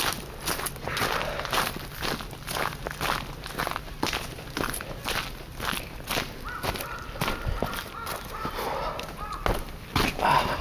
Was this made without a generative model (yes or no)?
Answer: yes